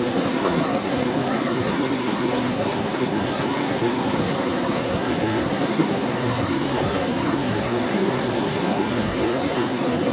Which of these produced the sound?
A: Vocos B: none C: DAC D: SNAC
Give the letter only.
D